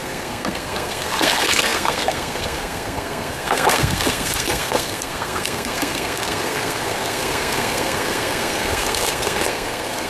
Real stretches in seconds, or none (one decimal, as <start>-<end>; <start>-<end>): none